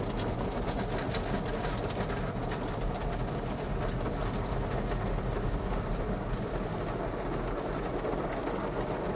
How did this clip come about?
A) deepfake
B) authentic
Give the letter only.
B